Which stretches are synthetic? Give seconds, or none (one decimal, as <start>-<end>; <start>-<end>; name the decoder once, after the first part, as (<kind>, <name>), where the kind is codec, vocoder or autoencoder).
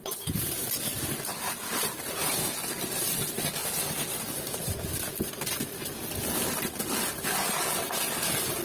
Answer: none